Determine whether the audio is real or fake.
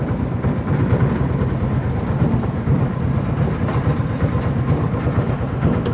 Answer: real